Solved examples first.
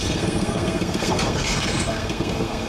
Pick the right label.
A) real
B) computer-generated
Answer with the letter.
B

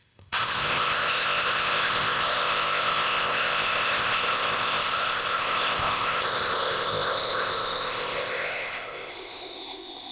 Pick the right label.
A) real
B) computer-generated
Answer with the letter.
B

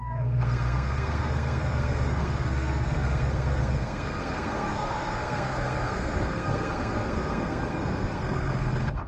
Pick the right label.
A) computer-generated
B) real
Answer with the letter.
A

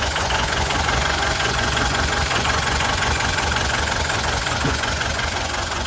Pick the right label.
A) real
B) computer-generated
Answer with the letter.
B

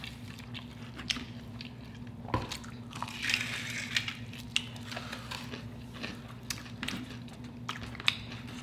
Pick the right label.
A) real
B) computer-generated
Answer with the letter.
A